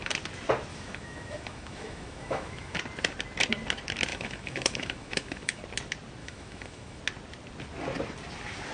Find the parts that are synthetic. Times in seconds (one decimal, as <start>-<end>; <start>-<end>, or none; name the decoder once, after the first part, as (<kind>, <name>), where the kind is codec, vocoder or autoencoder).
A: 0.7-2.8 (autoencoder, DAC-VAE); 4.1-5.6; 6.2-7.0